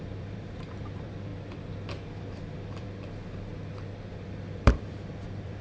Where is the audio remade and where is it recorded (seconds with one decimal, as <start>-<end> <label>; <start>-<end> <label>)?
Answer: 0.0-1.3 remade; 1.3-2.1 recorded; 2.1-3.5 remade; 3.5-4.1 recorded; 4.1-5.6 remade